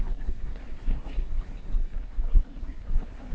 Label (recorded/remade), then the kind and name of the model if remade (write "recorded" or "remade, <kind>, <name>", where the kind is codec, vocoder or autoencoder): remade, codec, SNAC